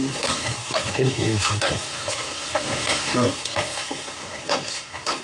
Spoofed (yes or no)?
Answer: yes